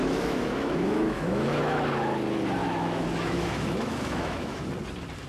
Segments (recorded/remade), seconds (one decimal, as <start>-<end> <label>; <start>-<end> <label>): 0.0-1.9 remade; 1.9-2.6 recorded; 2.6-4.7 remade; 4.7-5.3 recorded